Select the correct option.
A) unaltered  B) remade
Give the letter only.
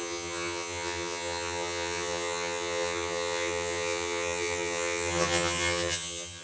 B